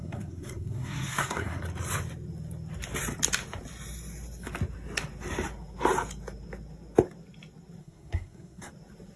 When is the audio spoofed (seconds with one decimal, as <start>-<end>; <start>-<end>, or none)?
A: 0.0-1.6; 7.8-8.7